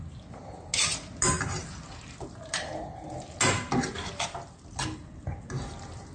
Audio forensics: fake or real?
real